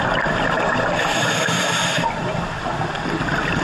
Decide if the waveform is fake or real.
real